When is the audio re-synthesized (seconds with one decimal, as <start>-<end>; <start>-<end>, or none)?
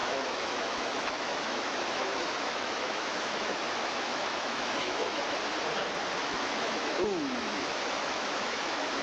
0.0-5.2; 6.2-9.0